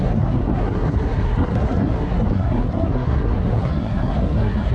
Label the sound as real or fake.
fake